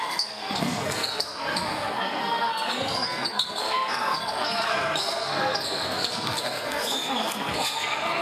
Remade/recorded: remade